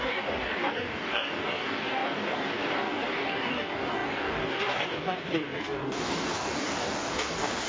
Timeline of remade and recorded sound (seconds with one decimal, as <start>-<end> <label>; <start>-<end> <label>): 0.0-7.7 remade